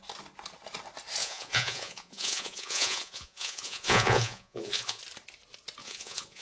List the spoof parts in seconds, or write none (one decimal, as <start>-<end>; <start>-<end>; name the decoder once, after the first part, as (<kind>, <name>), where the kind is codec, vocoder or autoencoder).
1.2-5.0 (vocoder, Vocos); 5.8-6.4